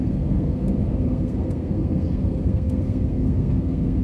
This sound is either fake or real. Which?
fake